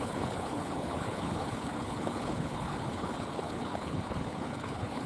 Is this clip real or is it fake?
fake